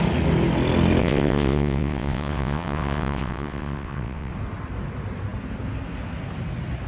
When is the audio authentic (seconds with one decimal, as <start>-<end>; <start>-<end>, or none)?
0.0-1.0; 4.3-6.9